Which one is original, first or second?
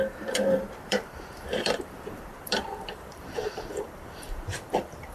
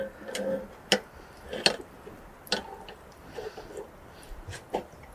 second